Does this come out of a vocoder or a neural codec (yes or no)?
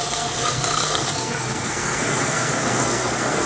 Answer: yes